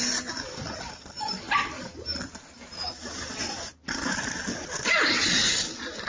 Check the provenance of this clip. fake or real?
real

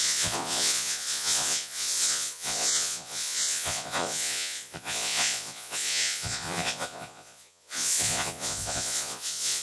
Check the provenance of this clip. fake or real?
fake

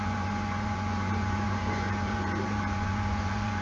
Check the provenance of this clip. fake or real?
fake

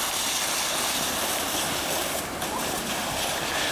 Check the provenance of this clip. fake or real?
real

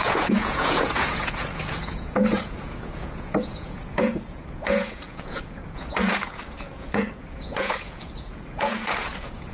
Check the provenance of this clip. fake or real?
fake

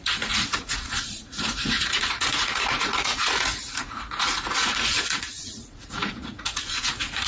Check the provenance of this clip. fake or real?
fake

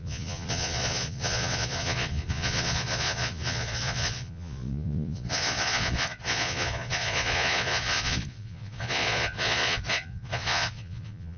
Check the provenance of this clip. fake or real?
fake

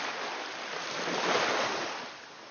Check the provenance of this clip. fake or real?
real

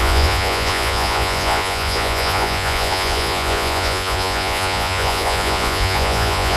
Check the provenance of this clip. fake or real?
fake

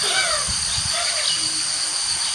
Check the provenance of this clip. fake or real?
real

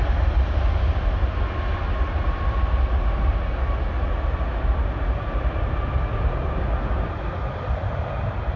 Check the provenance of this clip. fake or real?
real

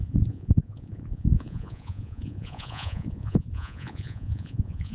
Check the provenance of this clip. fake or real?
fake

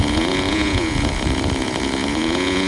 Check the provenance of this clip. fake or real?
fake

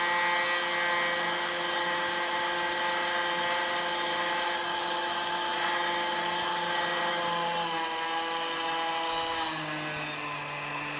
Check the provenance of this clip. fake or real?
real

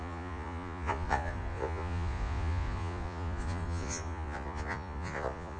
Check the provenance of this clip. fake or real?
fake